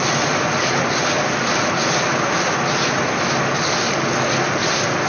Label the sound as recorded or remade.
recorded